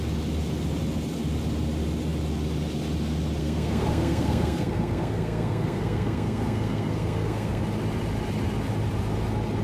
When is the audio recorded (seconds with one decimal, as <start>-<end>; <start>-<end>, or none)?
0.0-3.4; 7.6-9.6